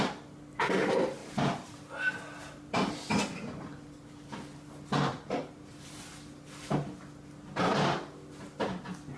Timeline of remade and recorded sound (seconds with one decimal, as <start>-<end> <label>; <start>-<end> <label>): 0.0-5.1 recorded; 5.1-6.1 remade; 6.1-9.2 recorded